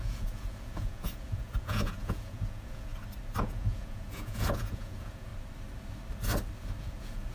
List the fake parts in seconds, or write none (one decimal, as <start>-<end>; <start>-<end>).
0.0-2.9; 3.4-5.3; 6.8-7.3